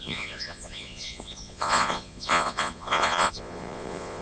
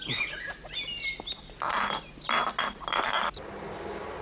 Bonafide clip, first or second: second